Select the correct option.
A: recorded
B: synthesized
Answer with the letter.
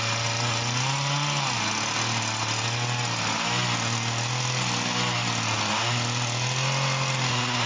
A